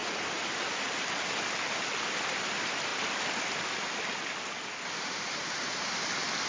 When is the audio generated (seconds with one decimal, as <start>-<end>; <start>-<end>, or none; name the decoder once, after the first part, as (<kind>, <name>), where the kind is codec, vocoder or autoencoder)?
none